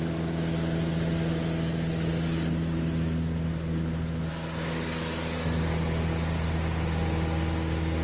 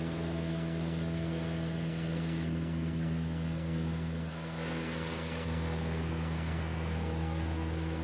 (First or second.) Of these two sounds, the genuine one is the first